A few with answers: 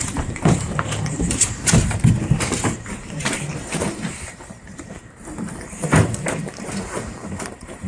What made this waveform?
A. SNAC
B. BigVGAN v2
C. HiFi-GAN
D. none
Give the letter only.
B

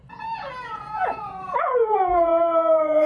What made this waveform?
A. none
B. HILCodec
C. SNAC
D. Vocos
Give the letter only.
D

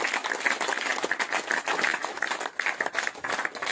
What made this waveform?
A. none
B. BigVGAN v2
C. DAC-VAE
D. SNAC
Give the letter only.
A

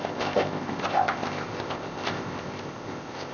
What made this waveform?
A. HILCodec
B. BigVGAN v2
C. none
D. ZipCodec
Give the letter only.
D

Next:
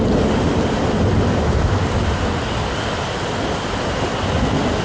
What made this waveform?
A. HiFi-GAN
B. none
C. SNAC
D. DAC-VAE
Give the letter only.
B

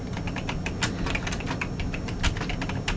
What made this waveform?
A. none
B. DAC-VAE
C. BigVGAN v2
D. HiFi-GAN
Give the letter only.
A